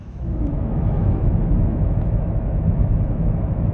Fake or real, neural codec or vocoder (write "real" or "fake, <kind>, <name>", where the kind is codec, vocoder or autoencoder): fake, autoencoder, DAC-VAE